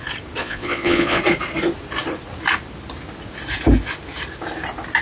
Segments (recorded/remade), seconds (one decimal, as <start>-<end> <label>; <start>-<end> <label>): 0.0-0.4 recorded; 0.4-1.2 remade; 1.2-5.0 recorded